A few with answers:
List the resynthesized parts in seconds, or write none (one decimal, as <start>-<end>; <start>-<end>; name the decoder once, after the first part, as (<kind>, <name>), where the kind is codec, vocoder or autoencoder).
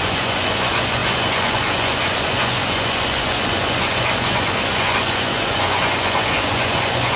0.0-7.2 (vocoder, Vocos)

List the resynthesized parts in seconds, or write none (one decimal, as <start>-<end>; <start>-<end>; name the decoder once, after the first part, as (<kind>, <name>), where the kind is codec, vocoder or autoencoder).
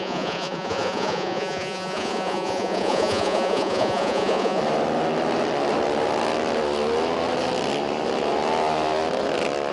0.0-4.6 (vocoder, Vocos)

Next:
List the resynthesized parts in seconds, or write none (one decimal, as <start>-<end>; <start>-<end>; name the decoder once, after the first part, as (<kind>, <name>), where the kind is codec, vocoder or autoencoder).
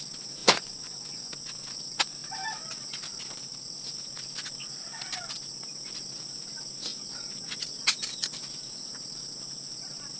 0.4-1.3 (vocoder, Vocos)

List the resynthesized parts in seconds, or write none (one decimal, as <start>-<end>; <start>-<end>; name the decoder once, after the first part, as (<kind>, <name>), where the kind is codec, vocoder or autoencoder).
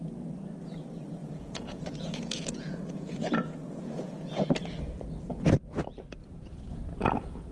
1.2-4.8 (vocoder, Vocos); 6.2-6.8